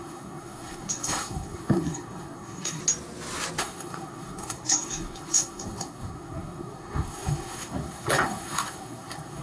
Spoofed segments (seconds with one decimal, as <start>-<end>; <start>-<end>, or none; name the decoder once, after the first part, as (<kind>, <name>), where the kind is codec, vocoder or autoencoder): 0.0-2.8 (codec, SNAC); 3.6-9.4